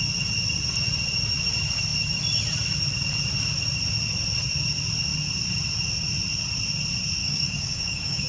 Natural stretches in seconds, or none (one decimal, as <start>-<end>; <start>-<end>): 0.0-7.2